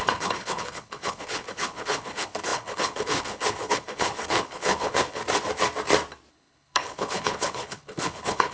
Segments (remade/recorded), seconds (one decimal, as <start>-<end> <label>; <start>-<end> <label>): 0.0-5.2 remade; 5.2-6.3 recorded; 6.3-8.5 remade